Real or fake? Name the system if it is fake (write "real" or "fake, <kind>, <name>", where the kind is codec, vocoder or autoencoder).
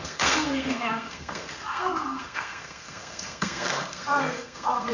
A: fake, codec, SNAC